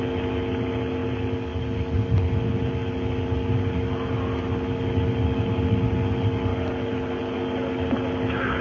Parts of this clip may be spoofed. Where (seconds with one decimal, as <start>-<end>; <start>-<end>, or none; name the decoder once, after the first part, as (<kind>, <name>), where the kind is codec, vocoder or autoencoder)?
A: none